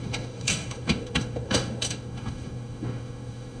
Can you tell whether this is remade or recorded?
remade